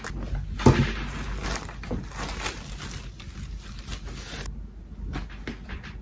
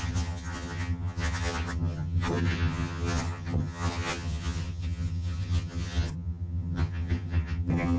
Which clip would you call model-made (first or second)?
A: second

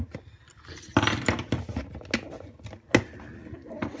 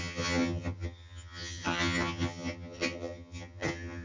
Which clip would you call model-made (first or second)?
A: second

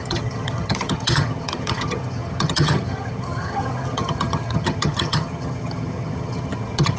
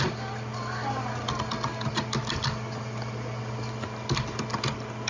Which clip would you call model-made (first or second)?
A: first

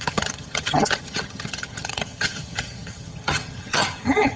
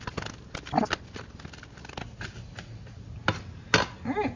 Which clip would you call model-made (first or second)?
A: first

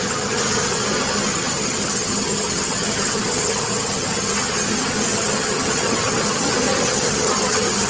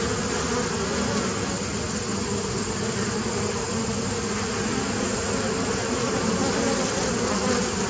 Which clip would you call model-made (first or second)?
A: first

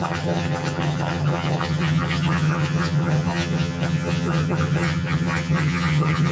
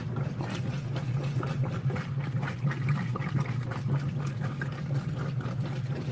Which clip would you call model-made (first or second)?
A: first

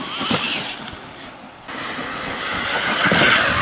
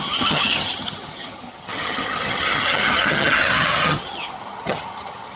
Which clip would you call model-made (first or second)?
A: second